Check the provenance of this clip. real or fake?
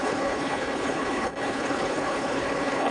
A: fake